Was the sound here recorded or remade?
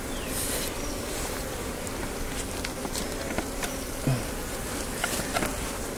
recorded